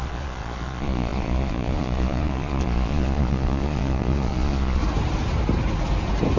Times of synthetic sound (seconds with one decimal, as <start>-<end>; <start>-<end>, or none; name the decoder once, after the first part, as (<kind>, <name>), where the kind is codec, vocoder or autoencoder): 0.0-4.8 (vocoder, Vocos)